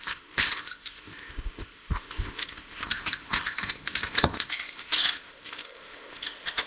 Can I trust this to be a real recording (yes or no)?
no